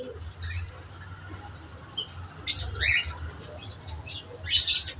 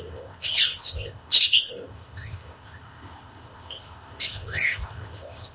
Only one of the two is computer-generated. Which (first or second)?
second